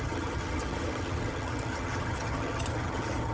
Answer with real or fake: fake